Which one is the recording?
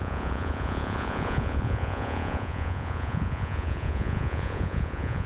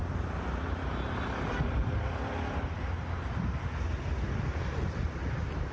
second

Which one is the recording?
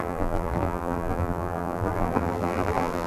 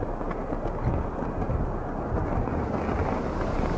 second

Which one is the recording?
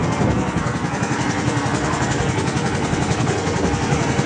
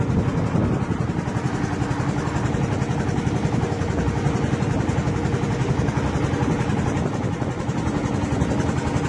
second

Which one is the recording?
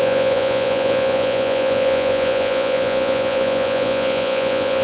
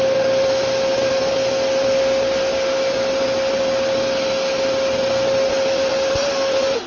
second